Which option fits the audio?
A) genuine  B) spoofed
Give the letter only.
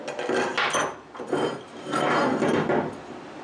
A